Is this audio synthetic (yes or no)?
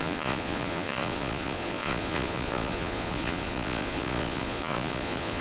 yes